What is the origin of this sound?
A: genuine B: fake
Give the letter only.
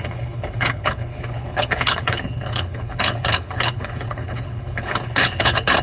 B